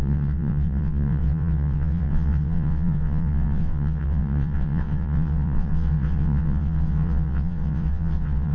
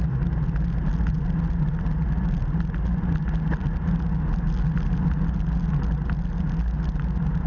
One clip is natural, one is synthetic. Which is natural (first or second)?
second